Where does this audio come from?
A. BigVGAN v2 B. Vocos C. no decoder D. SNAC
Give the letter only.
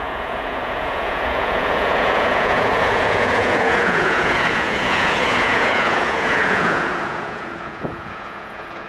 B